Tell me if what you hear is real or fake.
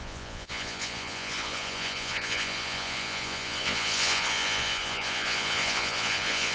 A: fake